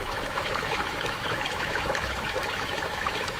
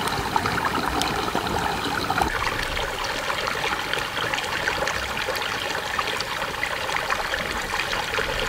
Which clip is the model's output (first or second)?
first